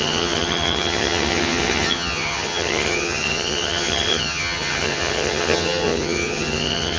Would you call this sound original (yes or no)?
no